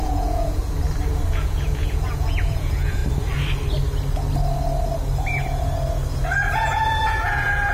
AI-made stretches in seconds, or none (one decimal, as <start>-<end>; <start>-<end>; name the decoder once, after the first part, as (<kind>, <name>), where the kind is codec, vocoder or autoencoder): 0.0-0.6 (vocoder, Vocos); 1.3-3.0; 6.5-7.7